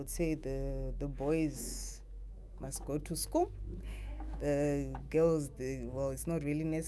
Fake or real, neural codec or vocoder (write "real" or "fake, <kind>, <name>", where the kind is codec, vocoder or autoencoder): fake, autoencoder, DAC-VAE